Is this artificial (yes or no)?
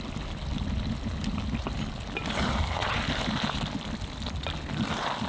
no